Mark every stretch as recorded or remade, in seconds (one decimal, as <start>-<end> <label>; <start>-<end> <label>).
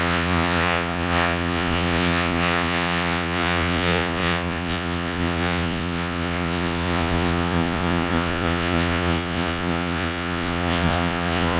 0.0-11.6 remade